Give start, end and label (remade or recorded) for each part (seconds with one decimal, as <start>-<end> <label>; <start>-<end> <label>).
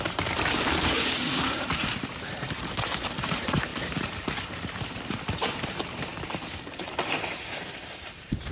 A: 0.0-3.7 remade; 3.7-4.3 recorded; 4.3-8.5 remade